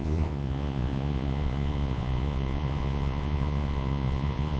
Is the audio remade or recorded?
remade